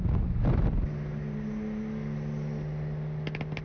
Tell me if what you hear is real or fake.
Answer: real